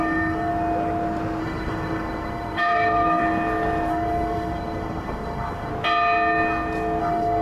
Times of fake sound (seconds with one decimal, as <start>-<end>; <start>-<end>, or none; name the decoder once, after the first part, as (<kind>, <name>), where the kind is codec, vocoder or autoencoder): 0.0-0.5 (codec, SNAC); 1.4-3.2; 3.9-5.7; 7.0-7.4